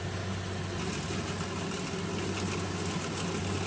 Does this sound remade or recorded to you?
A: recorded